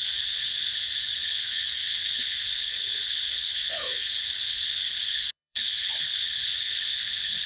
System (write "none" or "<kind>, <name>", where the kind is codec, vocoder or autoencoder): codec, HILCodec